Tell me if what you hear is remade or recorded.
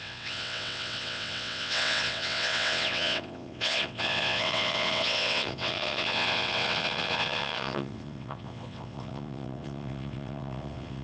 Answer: remade